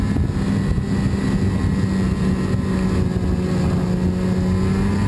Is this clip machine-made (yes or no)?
no